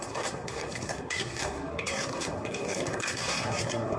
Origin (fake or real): fake